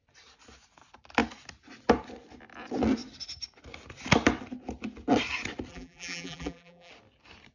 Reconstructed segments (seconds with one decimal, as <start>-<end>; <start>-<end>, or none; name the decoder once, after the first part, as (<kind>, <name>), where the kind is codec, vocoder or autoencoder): 5.7-6.9 (vocoder, BigVGAN v2)